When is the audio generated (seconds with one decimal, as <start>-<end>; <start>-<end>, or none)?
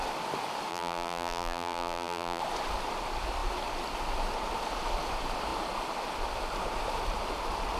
0.7-2.4